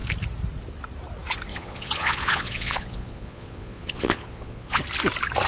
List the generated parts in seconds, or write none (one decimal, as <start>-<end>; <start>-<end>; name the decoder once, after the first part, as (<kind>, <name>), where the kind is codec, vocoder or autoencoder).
1.5-4.8 (vocoder, Vocos)